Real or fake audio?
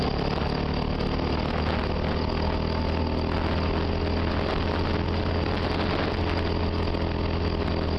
real